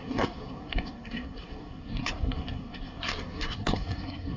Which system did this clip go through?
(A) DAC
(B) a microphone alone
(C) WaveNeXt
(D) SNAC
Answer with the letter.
D